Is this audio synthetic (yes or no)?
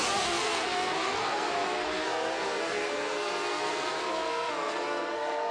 yes